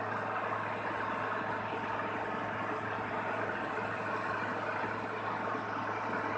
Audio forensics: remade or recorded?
recorded